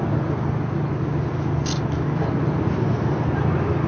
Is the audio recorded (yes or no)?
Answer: yes